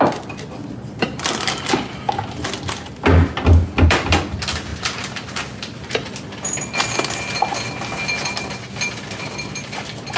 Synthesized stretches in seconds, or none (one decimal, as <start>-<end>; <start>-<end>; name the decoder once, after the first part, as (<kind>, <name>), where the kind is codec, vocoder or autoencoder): 0.6-1.2 (vocoder, BigVGAN v2); 4.7-5.9